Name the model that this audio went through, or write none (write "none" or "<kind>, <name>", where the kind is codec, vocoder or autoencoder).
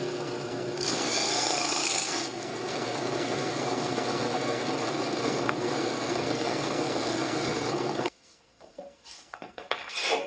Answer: codec, SNAC